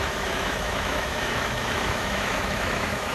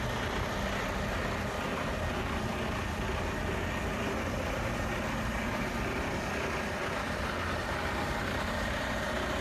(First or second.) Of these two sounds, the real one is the second